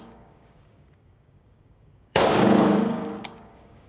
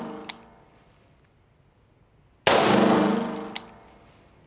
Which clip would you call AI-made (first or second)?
first